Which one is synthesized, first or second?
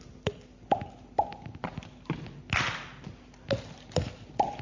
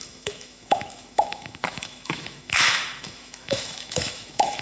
second